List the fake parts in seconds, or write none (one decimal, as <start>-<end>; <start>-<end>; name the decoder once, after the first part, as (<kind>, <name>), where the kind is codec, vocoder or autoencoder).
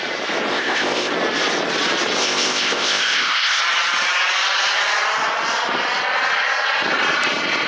0.5-1.1 (codec, ZipCodec); 2.2-3.6